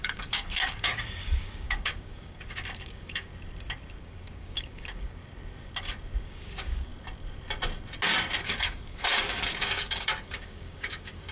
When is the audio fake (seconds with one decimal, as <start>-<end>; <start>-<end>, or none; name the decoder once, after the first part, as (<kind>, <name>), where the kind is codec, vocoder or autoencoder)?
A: 0.0-3.3 (codec, DAC); 4.0-5.2; 6.2-6.9; 8.4-11.3